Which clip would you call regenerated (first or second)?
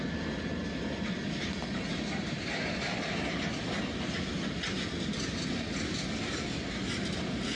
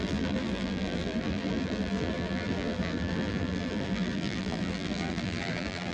second